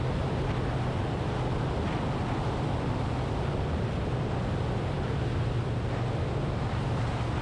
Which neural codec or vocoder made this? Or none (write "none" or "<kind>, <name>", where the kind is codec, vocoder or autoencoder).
none